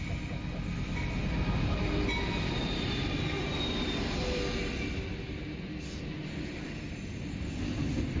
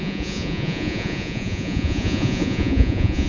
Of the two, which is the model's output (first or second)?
second